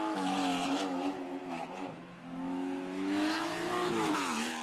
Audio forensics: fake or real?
fake